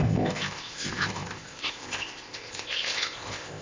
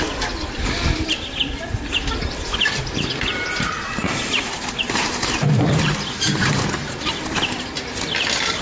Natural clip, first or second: second